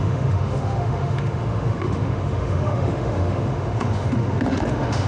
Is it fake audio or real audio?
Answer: fake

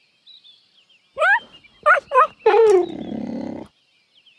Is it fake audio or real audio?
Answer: real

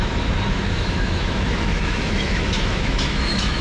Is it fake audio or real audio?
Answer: fake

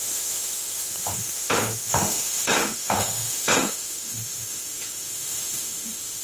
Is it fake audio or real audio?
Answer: fake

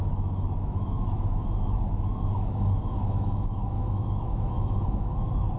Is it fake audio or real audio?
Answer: fake